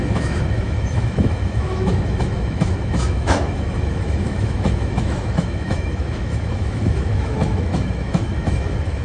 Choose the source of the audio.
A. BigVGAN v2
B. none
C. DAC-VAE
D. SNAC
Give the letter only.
C